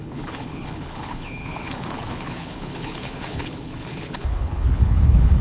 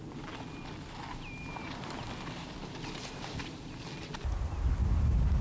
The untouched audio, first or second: second